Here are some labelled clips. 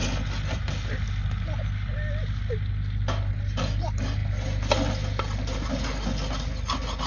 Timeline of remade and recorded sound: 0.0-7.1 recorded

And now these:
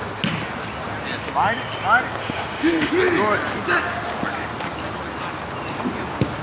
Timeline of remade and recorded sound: 0.0-2.2 recorded; 2.2-2.9 remade; 2.9-6.4 recorded

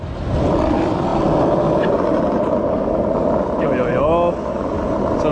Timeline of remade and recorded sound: 0.0-5.3 recorded

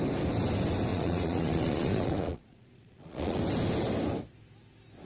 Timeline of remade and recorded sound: 0.0-0.9 recorded; 0.9-3.4 remade; 3.4-5.1 recorded

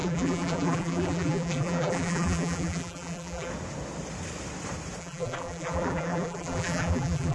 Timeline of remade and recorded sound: 0.0-3.5 remade; 3.5-5.0 recorded; 5.0-7.3 remade

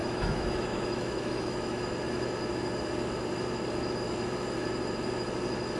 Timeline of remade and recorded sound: 0.0-1.8 remade; 1.8-5.8 recorded